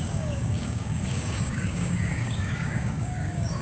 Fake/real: fake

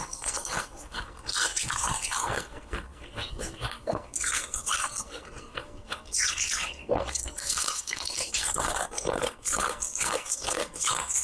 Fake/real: fake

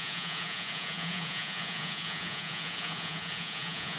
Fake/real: fake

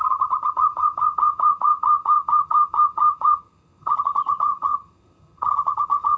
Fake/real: fake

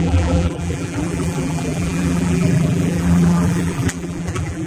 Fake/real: fake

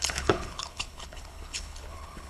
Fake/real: fake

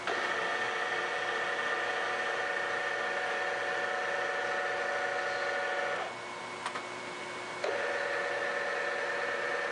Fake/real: real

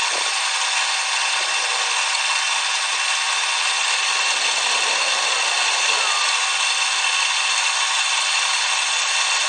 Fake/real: real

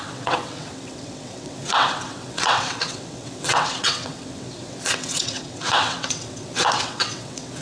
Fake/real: fake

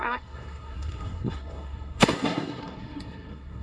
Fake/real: fake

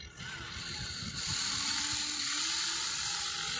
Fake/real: real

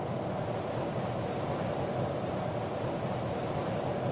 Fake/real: real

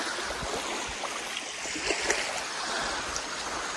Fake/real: real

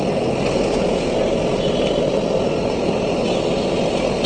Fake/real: real